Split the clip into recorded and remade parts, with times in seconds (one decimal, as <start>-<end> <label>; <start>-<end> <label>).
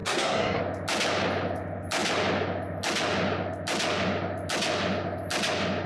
0.0-0.6 remade; 0.6-5.9 recorded